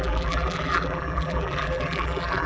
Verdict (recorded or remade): remade